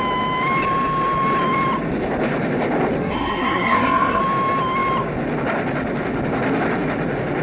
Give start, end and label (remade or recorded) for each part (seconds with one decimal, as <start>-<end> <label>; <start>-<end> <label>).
0.0-3.0 recorded; 3.0-4.2 remade; 4.2-7.4 recorded